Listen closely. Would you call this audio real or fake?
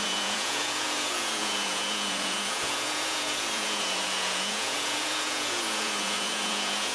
fake